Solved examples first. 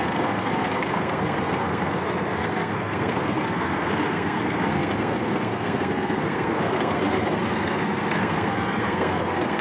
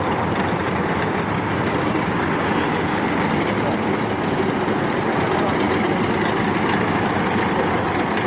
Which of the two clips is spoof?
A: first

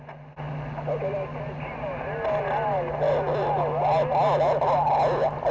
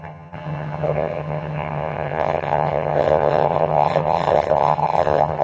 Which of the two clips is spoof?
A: second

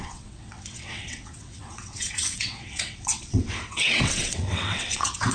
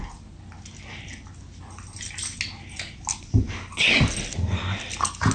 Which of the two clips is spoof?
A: first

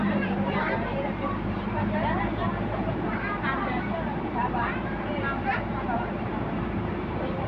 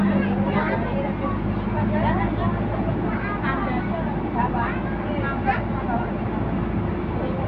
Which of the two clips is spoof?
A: first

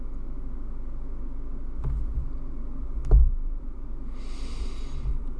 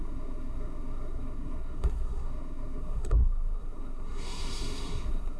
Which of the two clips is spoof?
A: second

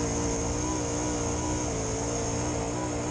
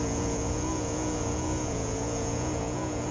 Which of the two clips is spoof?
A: second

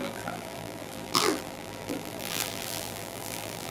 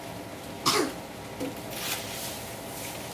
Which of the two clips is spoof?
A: first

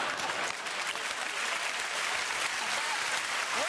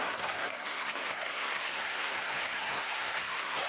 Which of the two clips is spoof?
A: second